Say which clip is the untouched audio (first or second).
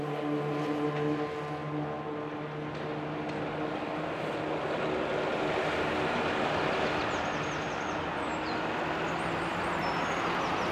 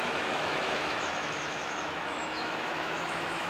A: first